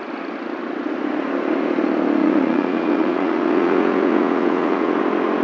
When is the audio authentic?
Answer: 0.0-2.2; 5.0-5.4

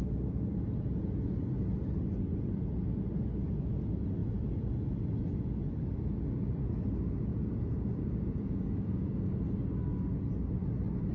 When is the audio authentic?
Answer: 0.0-7.3; 9.3-11.1